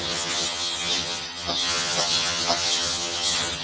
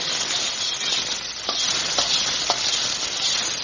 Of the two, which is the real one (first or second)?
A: second